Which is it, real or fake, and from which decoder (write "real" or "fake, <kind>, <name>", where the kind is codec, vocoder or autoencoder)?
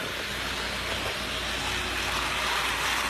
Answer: real